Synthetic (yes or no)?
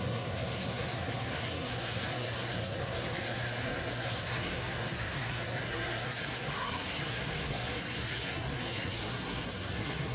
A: yes